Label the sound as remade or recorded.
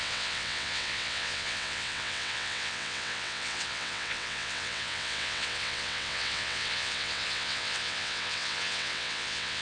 remade